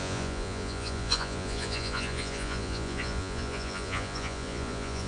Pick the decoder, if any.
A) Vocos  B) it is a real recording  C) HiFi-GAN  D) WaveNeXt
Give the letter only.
A